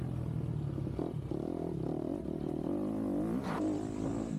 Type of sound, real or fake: real